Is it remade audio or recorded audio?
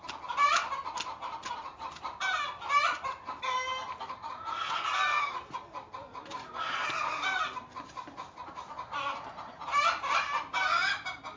recorded